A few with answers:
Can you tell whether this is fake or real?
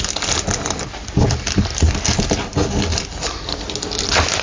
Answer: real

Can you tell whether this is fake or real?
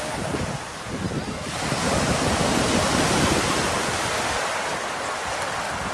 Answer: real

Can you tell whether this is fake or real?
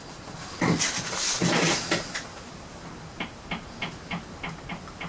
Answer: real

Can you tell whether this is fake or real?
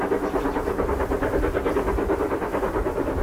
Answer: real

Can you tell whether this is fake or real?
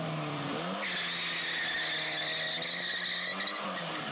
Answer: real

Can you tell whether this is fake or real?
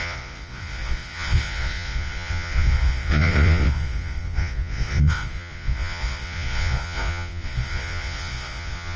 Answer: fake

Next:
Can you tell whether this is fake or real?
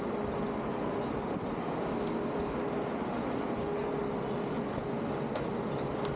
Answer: real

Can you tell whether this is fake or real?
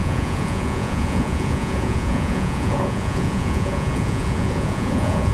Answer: fake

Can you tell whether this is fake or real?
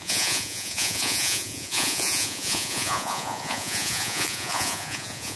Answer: fake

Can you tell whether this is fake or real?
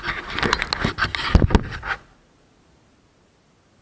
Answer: real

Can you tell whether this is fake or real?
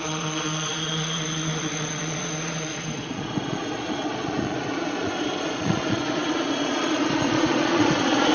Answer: fake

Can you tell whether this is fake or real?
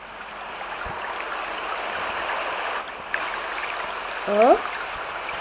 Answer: real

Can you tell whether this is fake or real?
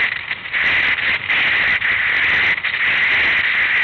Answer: real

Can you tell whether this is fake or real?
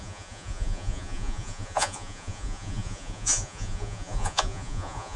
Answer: fake